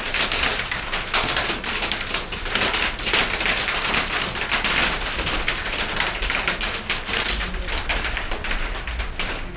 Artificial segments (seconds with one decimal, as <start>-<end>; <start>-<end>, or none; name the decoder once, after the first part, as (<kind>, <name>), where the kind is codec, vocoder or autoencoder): none